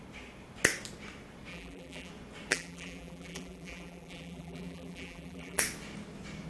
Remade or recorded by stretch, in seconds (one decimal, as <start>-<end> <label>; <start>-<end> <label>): 0.0-1.5 recorded; 1.5-2.1 remade; 2.1-2.5 recorded; 2.5-5.6 remade; 5.6-6.5 recorded